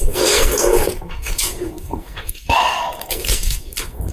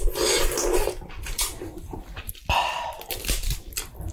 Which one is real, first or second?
second